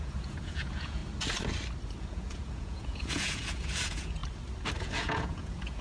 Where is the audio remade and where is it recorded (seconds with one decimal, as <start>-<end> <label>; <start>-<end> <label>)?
0.0-1.0 remade; 1.0-2.0 recorded; 2.0-4.2 remade; 4.2-4.8 recorded; 4.8-5.8 remade